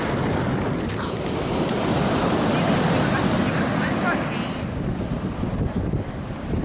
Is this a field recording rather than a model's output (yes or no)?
yes